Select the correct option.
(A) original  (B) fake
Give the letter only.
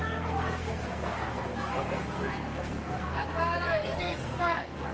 B